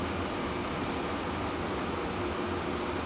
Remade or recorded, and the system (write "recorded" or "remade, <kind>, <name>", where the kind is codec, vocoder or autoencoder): recorded